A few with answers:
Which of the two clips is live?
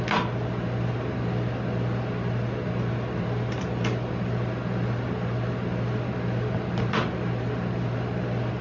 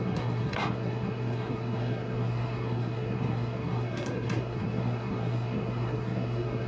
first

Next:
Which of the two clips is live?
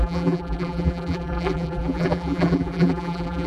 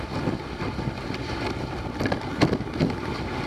second